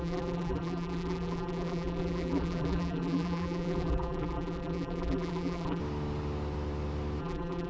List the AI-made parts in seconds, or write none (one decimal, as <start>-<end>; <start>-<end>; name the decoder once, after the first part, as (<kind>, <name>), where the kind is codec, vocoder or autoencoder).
0.0-5.8 (vocoder, BigVGAN v2); 7.2-7.7